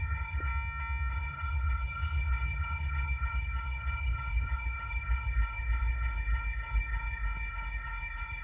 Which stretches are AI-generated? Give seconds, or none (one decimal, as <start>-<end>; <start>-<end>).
0.0-0.5; 1.1-8.4